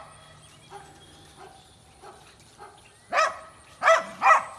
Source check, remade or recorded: recorded